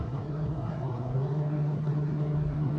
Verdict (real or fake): fake